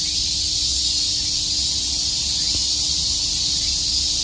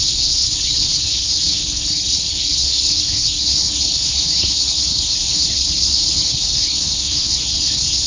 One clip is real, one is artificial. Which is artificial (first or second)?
second